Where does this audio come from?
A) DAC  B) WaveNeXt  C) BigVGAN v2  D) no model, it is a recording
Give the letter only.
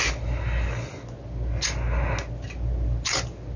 D